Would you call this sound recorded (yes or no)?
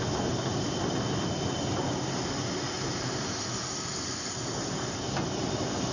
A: yes